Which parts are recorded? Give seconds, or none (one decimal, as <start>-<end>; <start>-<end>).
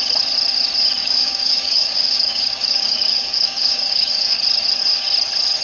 0.0-1.0; 4.4-5.6